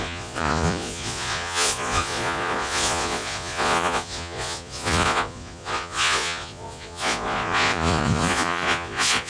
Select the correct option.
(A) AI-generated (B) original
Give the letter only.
A